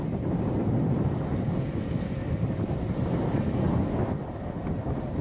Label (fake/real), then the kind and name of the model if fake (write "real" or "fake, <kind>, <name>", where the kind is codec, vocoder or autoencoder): real